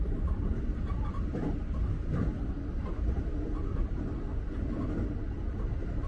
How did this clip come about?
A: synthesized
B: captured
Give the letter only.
B